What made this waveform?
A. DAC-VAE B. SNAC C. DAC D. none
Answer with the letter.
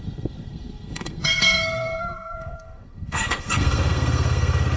B